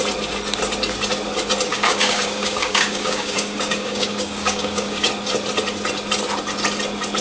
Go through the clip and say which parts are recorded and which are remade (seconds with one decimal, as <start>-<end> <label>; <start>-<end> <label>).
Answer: 0.0-1.7 recorded; 1.7-5.1 remade; 5.1-7.2 recorded